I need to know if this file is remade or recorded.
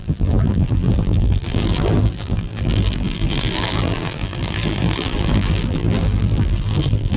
remade